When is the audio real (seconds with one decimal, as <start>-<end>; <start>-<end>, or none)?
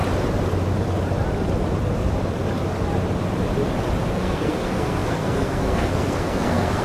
0.0-4.1